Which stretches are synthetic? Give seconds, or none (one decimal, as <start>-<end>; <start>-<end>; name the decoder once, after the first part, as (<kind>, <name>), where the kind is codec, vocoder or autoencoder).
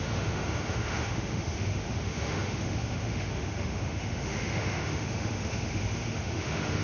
0.0-6.8 (autoencoder, DAC-VAE)